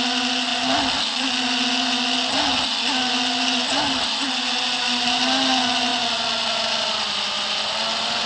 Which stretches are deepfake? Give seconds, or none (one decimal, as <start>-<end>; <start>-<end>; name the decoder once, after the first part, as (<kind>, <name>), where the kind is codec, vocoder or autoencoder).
none